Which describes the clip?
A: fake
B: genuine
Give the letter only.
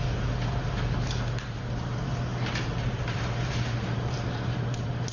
A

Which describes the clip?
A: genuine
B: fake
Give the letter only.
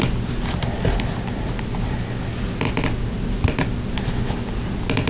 A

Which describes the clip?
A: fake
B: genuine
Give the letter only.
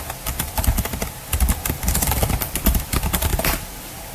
B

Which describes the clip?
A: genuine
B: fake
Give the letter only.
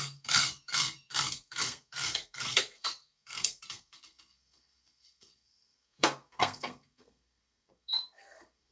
B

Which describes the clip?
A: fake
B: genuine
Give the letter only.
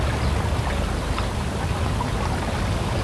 B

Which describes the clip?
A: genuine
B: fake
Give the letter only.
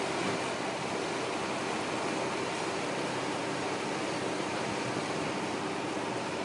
A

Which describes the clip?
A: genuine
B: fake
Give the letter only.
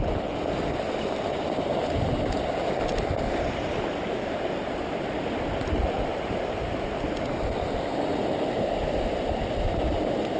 A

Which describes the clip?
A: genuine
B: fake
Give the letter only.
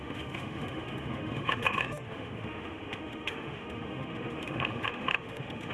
B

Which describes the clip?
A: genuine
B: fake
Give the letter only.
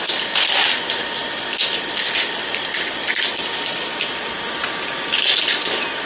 A